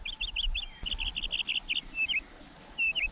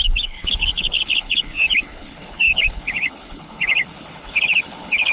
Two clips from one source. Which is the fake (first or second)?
second